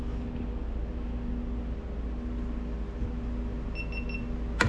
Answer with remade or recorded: recorded